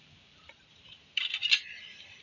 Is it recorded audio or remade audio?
remade